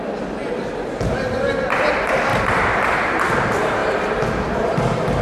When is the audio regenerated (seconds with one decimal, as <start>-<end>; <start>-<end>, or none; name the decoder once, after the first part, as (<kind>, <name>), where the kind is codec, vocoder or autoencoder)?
0.4-1.5 (vocoder, BigVGAN v2); 2.3-3.3; 3.8-5.2